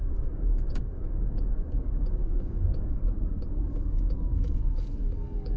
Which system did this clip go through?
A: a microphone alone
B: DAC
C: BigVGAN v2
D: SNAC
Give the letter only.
B